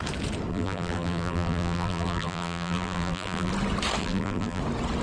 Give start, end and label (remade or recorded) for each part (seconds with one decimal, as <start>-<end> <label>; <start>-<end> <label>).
0.0-0.5 recorded; 0.5-3.5 remade; 3.5-4.0 recorded; 4.0-4.6 remade; 4.6-5.0 recorded